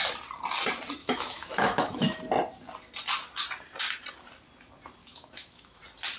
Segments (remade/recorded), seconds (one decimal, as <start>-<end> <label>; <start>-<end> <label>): 0.0-1.0 recorded; 1.0-2.2 remade; 2.2-5.0 recorded; 5.0-5.8 remade; 5.8-6.2 recorded